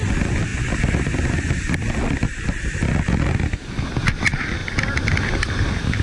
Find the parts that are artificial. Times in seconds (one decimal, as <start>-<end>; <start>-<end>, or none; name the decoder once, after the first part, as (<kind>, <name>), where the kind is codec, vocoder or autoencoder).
none

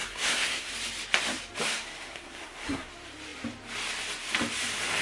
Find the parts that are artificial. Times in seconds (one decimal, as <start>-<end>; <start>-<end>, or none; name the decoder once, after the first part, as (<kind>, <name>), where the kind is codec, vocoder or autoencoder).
0.0-0.7 (codec, SNAC); 1.7-2.9

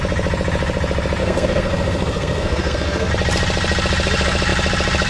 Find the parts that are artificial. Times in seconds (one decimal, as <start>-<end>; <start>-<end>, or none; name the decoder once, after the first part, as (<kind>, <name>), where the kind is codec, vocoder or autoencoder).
1.2-3.1 (codec, SNAC)